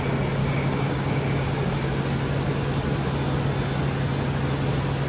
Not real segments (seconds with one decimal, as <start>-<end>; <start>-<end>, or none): 0.4-2.0